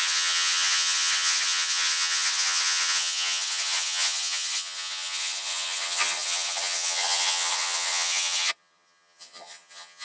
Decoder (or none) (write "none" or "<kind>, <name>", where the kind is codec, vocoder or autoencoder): vocoder, HiFi-GAN